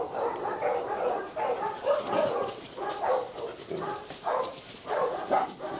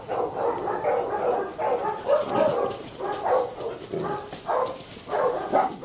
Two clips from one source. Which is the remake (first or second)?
first